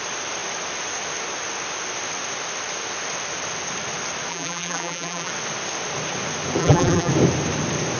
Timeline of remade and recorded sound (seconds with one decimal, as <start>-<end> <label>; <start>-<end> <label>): 0.0-4.3 recorded; 4.3-5.3 remade; 5.3-6.6 recorded; 6.6-7.1 remade; 7.1-8.0 recorded